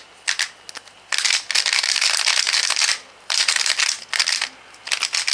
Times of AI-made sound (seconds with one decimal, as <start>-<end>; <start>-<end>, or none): none